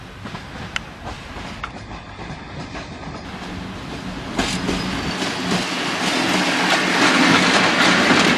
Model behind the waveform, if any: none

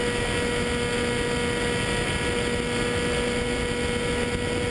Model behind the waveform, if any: none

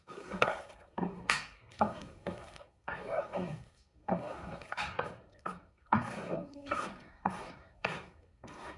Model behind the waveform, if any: codec, SNAC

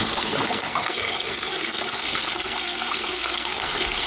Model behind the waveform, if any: codec, SNAC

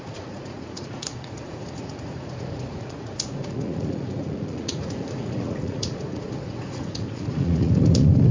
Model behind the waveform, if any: vocoder, Vocos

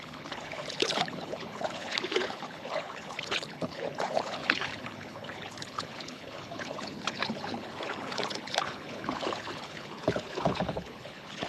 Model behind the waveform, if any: codec, HILCodec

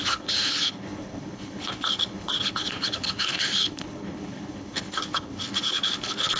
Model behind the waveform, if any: codec, HILCodec